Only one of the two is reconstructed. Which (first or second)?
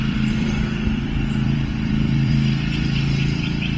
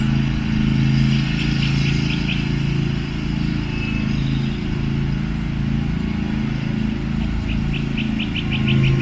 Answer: first